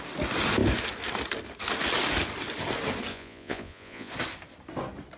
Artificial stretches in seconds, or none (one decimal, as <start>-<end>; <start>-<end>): 3.1-4.1